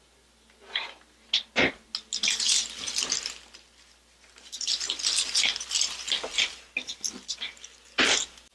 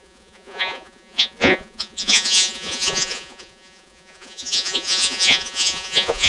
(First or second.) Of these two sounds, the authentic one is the first